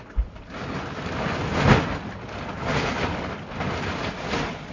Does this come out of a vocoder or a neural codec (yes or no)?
no